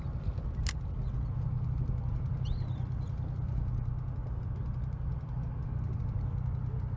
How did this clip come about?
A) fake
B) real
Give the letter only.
B